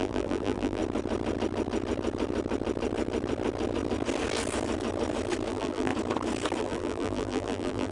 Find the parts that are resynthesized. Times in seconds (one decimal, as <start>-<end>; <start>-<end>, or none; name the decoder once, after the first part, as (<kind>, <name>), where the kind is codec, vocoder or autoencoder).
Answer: 0.0-0.8 (vocoder, BigVGAN v2); 5.5-5.9; 6.6-7.9